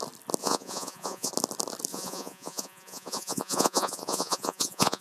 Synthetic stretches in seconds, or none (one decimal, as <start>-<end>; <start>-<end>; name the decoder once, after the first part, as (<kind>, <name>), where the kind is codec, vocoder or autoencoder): 0.4-1.3 (vocoder, Vocos); 1.9-5.0